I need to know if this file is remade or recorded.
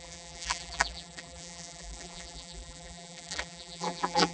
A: remade